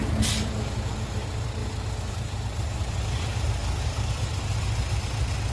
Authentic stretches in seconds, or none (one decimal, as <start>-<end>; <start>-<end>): 0.0-3.6; 4.2-5.5